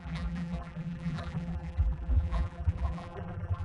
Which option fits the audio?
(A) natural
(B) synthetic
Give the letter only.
B